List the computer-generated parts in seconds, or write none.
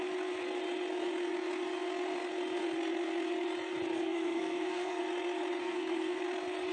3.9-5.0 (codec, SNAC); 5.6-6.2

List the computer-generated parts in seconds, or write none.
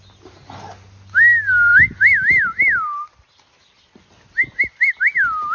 none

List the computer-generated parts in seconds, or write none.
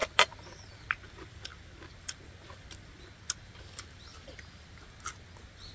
0.0-1.0 (vocoder, BigVGAN v2); 1.5-4.9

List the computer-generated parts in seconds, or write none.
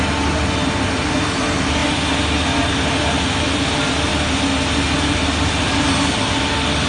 none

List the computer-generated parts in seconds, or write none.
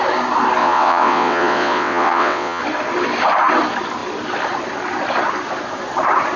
0.6-2.6 (vocoder, WaveNeXt)